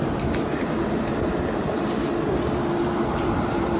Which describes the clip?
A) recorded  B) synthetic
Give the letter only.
B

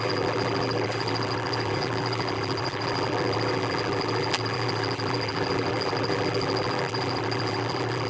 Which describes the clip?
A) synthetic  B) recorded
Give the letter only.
A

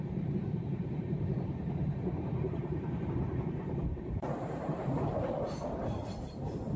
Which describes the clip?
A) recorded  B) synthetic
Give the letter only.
B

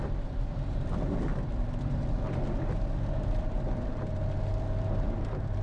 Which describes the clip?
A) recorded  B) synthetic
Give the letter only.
B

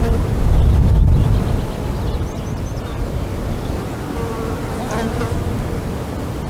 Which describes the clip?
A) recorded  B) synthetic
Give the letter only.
A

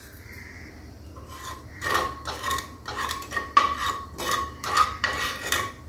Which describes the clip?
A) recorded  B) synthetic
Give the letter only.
B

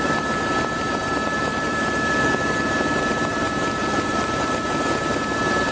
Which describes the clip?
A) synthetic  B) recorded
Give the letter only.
A